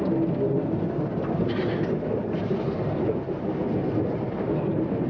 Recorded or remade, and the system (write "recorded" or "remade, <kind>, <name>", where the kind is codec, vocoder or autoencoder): recorded